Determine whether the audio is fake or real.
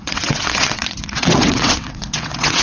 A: fake